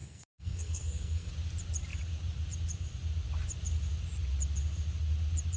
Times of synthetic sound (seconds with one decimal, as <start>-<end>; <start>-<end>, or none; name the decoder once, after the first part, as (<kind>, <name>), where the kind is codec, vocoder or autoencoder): 0.0-1.3 (codec, SNAC)